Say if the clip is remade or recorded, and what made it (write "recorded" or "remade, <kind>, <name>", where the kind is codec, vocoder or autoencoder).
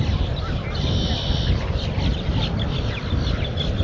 recorded